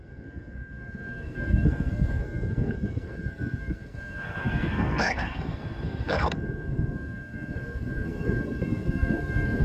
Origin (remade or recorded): remade